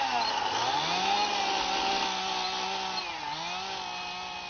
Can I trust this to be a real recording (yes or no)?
yes